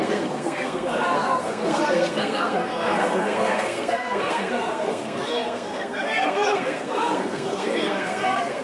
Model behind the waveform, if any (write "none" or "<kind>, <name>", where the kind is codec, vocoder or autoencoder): codec, SNAC